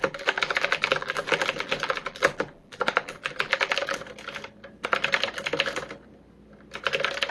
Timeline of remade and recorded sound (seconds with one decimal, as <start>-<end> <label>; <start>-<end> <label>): 0.0-4.0 remade; 4.0-7.3 recorded